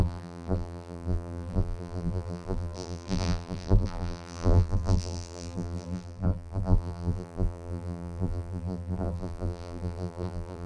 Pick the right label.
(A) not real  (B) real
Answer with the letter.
A